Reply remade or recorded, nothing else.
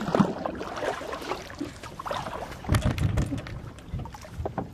recorded